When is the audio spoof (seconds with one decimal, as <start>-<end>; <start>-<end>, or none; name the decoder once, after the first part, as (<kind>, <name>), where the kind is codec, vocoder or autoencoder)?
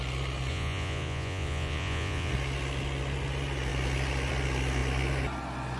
0.5-2.3 (vocoder, Vocos)